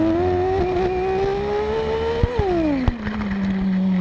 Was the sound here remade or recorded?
recorded